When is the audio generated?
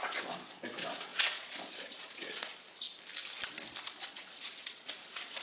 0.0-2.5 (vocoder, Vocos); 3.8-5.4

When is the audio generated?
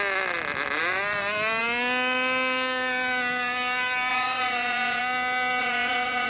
4.1-5.0 (vocoder, Vocos); 5.6-6.3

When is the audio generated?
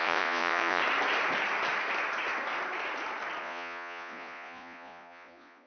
0.0-0.8 (vocoder, Vocos); 3.4-5.7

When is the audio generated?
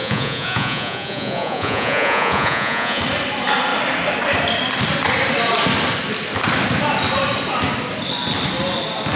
0.0-3.0 (vocoder, Vocos)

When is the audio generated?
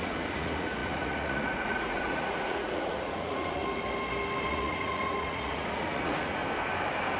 0.0-3.6 (vocoder, Vocos); 4.5-6.4